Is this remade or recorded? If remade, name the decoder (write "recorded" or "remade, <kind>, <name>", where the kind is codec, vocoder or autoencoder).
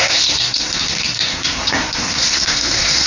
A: remade, codec, SNAC